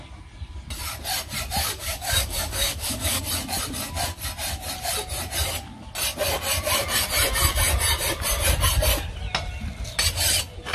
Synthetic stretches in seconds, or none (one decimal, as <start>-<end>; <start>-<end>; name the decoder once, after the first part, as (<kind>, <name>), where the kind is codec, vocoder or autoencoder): 1.6-3.2 (codec, DAC)